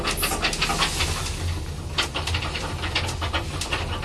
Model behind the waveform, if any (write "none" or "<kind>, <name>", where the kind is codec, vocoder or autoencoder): none